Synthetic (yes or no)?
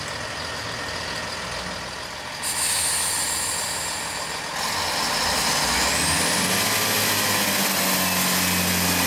no